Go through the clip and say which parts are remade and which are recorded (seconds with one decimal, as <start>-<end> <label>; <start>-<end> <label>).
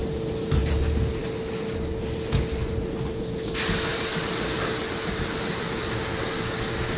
0.0-3.9 recorded; 3.9-5.9 remade; 5.9-7.0 recorded